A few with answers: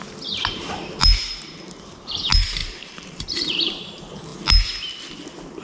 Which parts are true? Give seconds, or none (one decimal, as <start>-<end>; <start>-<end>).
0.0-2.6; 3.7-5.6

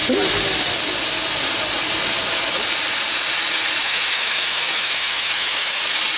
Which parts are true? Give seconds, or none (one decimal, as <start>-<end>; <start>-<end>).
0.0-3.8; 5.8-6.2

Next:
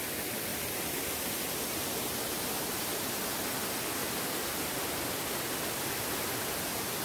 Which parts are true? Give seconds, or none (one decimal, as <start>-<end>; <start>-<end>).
0.0-0.5; 1.3-7.0

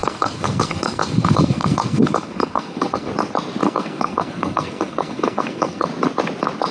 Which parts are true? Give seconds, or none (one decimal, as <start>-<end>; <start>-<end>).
3.1-3.6; 5.9-6.7

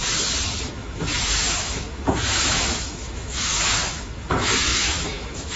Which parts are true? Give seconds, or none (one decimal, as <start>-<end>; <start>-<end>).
0.0-0.6

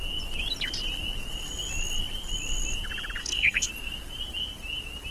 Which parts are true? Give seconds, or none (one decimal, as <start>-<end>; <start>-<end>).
0.0-3.2; 3.7-5.1

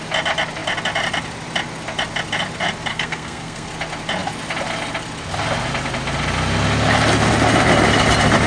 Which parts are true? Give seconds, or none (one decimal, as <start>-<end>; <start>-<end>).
0.0-2.9; 3.7-8.5

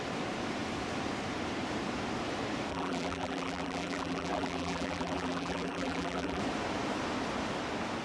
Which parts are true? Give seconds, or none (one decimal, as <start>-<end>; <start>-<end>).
0.0-2.7; 6.4-8.0